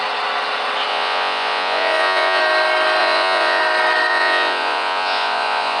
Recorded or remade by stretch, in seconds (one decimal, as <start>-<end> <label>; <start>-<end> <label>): 0.0-0.9 recorded; 0.9-2.4 remade; 2.4-3.0 recorded; 3.0-3.6 remade; 3.6-4.1 recorded; 4.1-5.8 remade